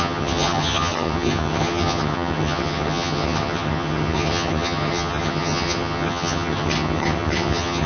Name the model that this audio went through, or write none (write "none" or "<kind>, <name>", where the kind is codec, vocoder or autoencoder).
vocoder, HiFi-GAN